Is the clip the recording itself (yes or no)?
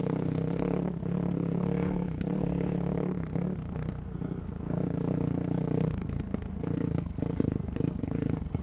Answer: no